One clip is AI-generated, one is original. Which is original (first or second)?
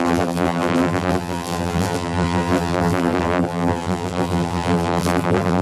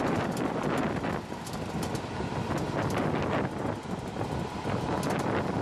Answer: second